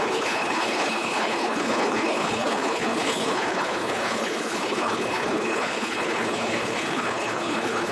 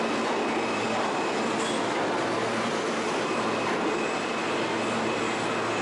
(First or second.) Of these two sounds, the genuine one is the second